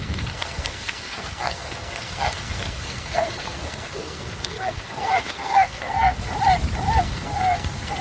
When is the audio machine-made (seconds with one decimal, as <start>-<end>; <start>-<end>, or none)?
0.0-6.3; 7.0-8.0